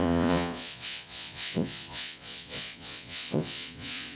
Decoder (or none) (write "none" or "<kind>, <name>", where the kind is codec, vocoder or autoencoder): vocoder, Vocos